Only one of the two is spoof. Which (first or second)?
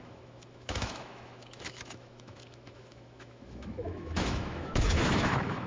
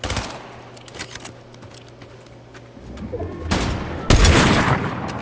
first